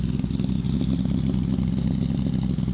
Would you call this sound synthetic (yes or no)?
no